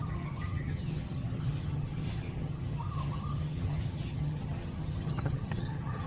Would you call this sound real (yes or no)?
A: no